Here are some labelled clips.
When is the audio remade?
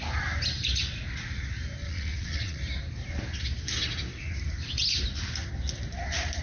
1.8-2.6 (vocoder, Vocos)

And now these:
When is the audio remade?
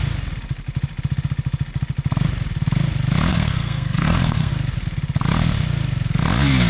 3.3-4.5 (codec, SNAC)